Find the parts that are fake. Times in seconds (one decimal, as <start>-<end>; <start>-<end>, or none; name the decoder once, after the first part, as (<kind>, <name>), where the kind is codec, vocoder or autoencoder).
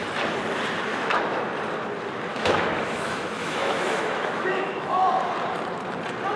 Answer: 0.9-1.4 (autoencoder, DAC-VAE); 2.3-5.0